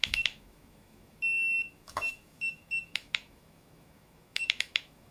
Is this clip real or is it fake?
fake